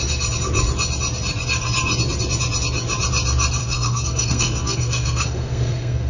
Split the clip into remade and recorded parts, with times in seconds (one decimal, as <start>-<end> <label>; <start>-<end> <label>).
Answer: 0.0-3.6 recorded; 3.6-6.1 remade